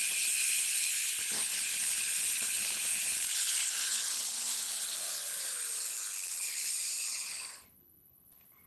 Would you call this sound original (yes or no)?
no